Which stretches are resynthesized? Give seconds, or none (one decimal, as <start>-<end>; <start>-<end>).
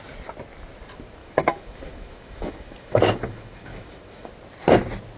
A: 1.2-4.3